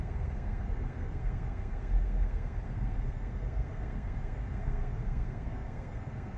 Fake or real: fake